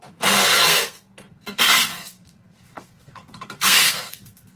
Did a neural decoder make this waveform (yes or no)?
yes